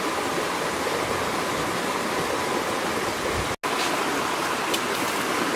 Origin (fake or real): real